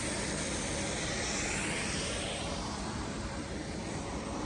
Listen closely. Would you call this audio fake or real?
fake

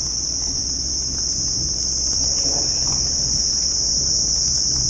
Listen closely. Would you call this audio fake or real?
real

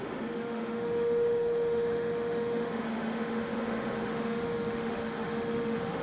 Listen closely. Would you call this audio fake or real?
fake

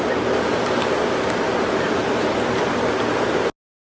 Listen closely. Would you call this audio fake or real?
real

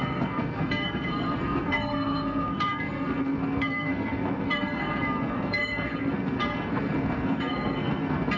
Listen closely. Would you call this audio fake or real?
fake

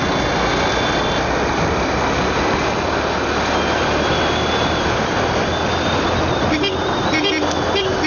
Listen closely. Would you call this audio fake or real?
real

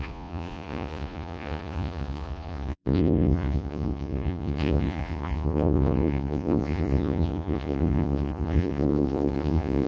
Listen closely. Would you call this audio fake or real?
fake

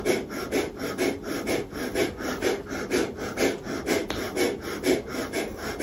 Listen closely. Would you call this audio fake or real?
real